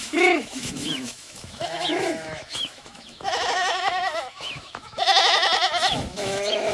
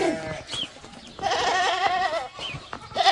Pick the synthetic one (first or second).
first